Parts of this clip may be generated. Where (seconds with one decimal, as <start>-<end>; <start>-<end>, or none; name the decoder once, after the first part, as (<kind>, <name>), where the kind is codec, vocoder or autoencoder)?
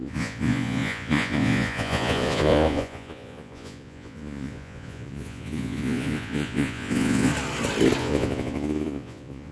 0.0-7.3 (vocoder, Vocos); 8.0-9.5